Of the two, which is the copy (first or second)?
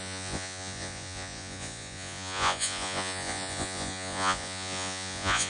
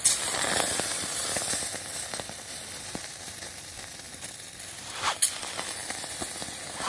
first